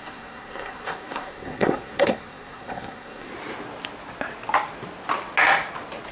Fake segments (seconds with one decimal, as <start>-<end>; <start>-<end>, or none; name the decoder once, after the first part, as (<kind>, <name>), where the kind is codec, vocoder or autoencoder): 0.0-3.3 (codec, SNAC)